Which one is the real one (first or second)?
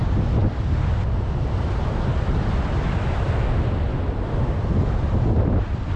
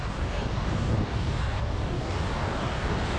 first